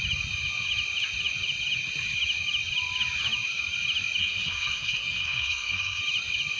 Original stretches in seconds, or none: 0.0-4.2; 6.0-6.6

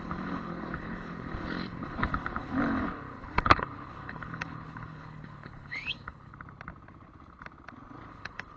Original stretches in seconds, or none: 6.3-8.1

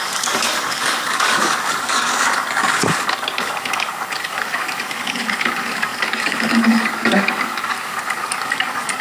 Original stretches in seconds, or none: none